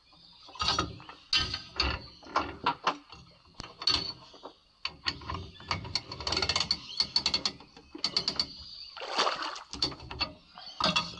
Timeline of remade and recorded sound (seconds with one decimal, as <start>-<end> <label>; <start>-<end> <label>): 0.0-11.2 recorded